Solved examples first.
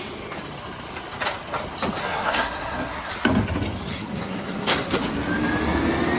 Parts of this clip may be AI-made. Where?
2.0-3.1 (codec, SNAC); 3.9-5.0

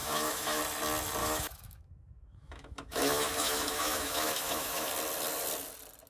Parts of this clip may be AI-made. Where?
0.0-0.6 (autoencoder, DAC-VAE); 1.2-4.9

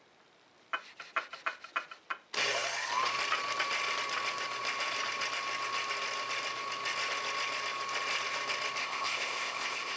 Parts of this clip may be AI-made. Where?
8.8-10.0 (codec, ZipCodec)

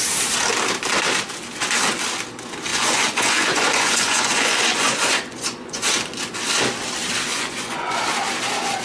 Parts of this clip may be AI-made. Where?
2.7-5.9 (vocoder, Vocos); 7.3-8.0

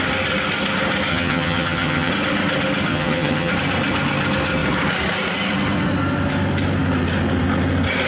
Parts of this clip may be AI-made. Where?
1.1-2.1 (vocoder, HiFi-GAN); 2.9-3.5

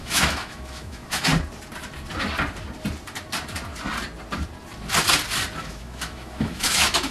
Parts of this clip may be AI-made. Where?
0.0-1.3 (autoencoder, DAC-VAE); 5.6-7.1